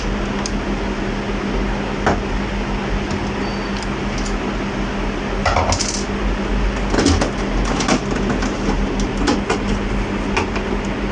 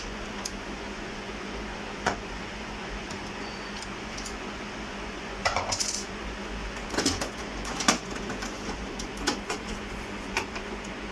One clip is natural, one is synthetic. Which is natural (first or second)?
first